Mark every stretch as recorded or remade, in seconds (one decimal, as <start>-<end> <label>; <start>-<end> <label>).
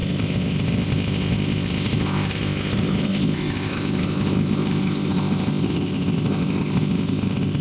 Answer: 0.0-7.6 remade